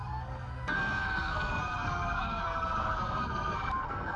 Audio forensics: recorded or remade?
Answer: remade